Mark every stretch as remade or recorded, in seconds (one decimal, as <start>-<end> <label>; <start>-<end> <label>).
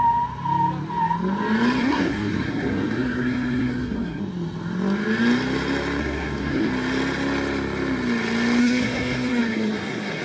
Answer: 0.0-1.8 recorded; 1.8-4.2 remade; 4.2-6.0 recorded; 6.0-6.7 remade; 6.7-8.6 recorded; 8.6-10.2 remade